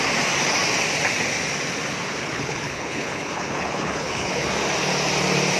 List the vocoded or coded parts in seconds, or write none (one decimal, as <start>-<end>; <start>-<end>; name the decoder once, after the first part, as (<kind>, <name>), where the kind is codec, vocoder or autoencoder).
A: 2.2-4.5 (codec, HILCodec)